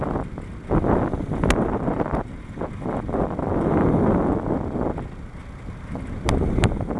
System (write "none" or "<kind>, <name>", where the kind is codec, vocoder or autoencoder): none